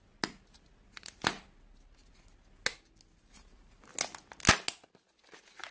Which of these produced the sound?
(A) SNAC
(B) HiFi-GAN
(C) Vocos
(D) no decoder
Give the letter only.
D